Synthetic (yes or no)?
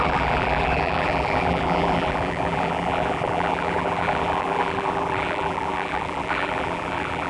yes